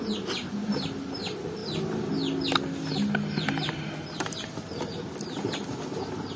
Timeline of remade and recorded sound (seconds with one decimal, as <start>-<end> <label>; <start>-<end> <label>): 0.0-6.4 recorded